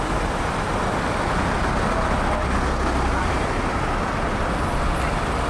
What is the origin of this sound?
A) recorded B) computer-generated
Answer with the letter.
A